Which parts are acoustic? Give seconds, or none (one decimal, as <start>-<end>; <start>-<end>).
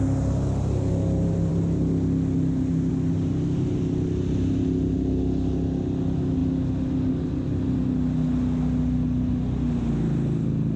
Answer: 0.0-10.8